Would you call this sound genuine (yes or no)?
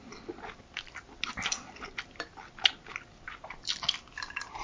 yes